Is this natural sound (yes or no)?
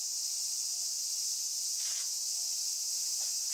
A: yes